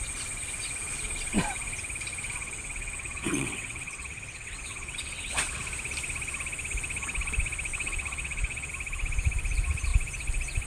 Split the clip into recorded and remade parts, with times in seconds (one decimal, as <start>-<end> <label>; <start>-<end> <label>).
0.0-2.4 recorded; 2.4-5.6 remade; 5.6-7.7 recorded; 7.7-8.7 remade; 8.7-10.7 recorded